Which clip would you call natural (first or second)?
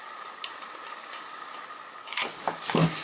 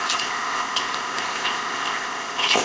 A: first